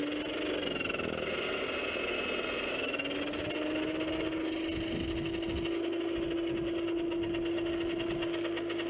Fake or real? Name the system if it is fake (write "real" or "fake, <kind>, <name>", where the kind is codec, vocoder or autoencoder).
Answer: real